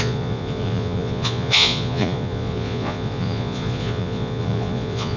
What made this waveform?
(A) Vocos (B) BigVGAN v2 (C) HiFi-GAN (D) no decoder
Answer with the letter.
A